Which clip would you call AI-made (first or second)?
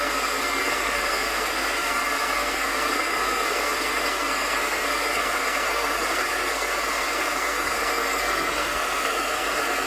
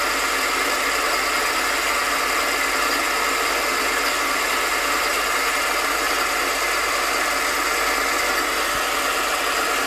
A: first